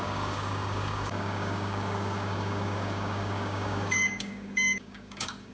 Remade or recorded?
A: remade